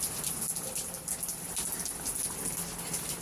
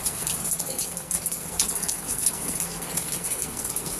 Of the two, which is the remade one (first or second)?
second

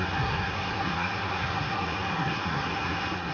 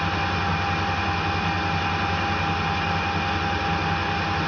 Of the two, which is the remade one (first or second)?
first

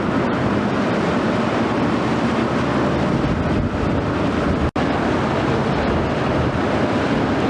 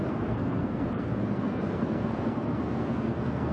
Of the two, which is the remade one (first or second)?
second